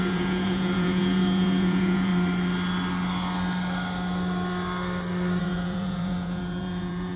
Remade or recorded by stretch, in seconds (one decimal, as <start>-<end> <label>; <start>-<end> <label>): 0.0-2.1 remade; 2.1-5.4 recorded; 5.4-7.2 remade